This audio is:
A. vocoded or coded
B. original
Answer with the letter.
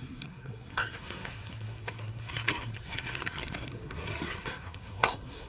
A